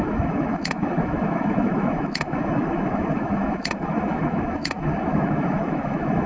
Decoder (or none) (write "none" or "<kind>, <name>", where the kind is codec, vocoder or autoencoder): autoencoder, DAC-VAE